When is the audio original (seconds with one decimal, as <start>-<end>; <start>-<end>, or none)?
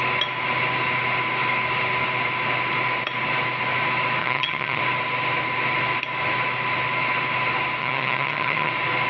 0.0-4.2; 4.8-7.8; 8.7-9.1